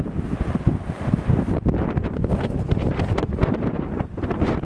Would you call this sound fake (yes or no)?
yes